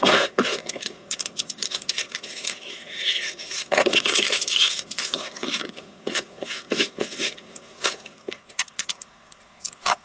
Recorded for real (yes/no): no